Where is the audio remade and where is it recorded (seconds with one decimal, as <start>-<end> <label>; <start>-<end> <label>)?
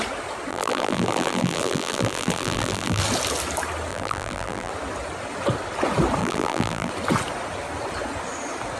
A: 0.0-0.5 recorded; 0.5-3.0 remade; 3.0-3.9 recorded; 3.9-4.7 remade; 4.7-6.2 recorded; 6.2-6.9 remade; 6.9-8.8 recorded